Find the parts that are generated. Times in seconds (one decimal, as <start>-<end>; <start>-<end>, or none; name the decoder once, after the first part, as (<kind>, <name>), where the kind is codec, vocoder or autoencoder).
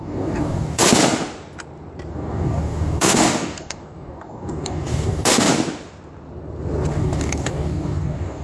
0.0-0.8 (codec, DAC); 2.1-5.5; 6.9-8.4